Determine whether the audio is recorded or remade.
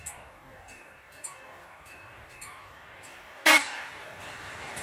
remade